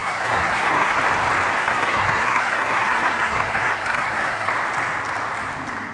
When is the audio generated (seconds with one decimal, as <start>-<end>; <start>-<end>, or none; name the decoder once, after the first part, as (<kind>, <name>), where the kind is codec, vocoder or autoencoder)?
0.0-1.0 (codec, SNAC); 1.6-4.5